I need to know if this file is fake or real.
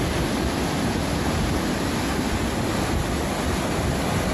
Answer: real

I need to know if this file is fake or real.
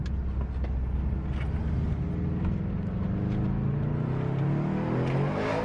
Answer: real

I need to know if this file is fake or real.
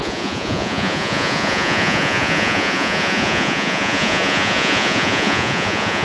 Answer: fake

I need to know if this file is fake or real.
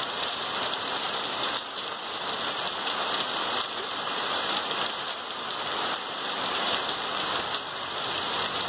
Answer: real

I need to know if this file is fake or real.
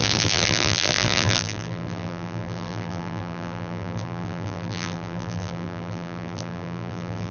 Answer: fake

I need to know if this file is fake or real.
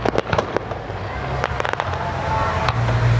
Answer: real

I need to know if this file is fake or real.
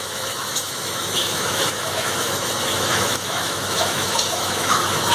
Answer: fake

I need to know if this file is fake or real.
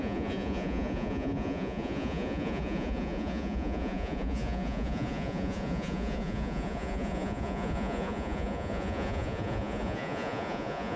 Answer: fake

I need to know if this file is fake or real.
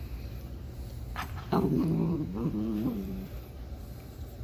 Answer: fake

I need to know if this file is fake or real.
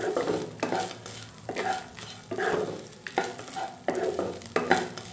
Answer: real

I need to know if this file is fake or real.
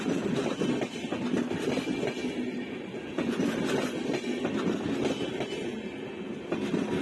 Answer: real